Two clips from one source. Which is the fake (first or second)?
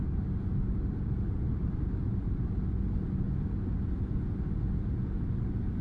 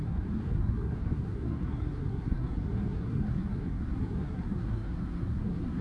second